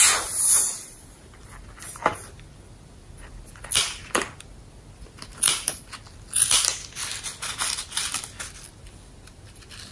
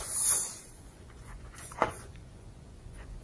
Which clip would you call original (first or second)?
first